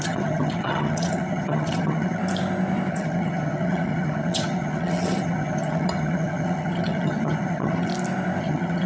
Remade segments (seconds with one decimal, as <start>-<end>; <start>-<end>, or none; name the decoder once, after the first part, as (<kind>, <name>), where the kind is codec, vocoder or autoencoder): 0.0-2.2 (vocoder, HiFi-GAN); 2.9-7.9; 8.4-8.9